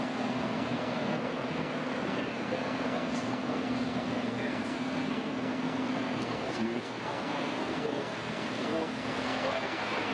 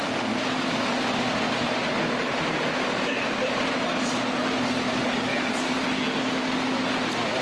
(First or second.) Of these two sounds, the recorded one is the second